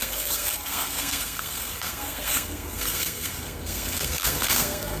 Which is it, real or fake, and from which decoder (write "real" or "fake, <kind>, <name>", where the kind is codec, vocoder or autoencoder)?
fake, codec, SNAC